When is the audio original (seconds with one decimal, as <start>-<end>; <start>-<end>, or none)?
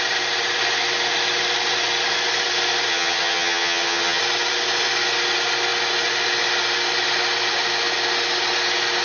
0.0-2.9; 4.2-9.0